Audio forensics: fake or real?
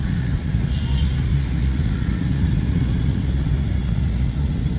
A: fake